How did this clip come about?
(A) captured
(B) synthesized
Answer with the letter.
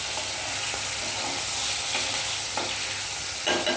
A